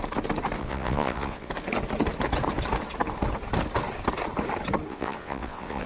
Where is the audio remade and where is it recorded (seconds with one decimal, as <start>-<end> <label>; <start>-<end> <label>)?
0.0-0.6 recorded; 0.6-1.5 remade; 1.5-4.9 recorded; 4.9-5.9 remade